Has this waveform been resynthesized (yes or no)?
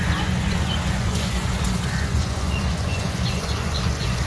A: yes